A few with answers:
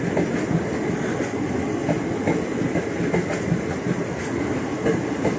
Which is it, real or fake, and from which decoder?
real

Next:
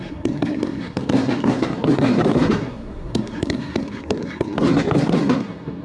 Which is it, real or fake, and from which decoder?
fake, codec, SNAC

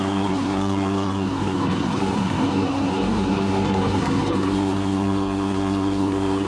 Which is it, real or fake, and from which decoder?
fake, codec, SNAC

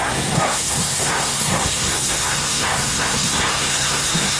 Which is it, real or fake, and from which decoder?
fake, codec, SNAC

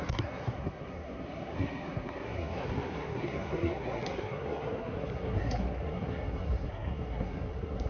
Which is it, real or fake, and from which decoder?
fake, codec, SNAC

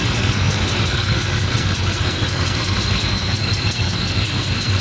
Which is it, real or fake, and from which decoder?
fake, codec, SNAC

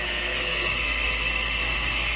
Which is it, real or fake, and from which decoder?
fake, codec, SNAC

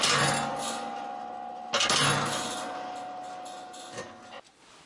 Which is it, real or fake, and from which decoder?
real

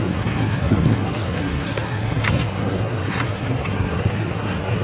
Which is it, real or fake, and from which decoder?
fake, codec, SNAC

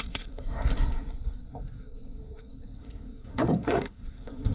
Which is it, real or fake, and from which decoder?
fake, codec, SNAC